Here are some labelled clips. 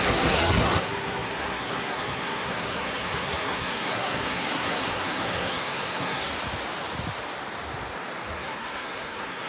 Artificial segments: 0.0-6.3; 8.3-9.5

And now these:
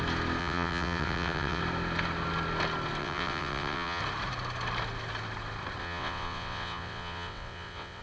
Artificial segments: 0.4-1.6; 3.0-4.0; 5.8-8.0

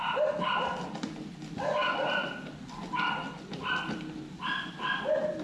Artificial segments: none

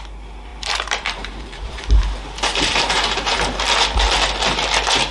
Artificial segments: 0.5-3.6

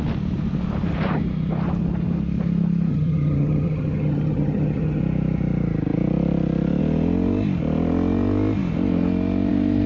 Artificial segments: 2.9-5.0